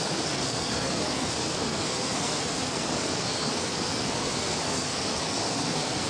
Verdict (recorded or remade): remade